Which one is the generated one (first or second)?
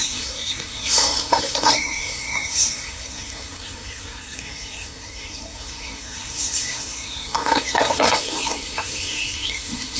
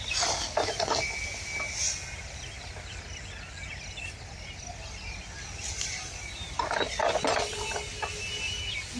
first